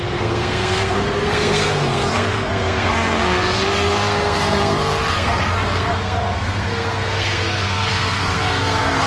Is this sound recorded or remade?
remade